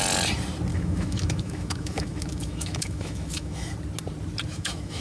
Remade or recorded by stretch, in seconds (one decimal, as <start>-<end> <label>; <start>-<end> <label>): 0.0-0.7 recorded; 0.7-3.7 remade; 3.7-4.5 recorded; 4.5-5.0 remade